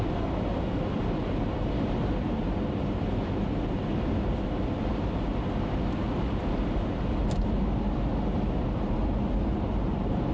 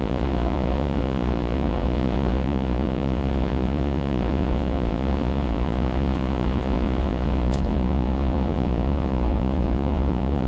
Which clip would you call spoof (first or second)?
second